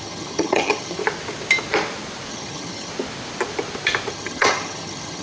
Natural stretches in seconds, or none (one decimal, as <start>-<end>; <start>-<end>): 1.0-2.3; 2.9-4.1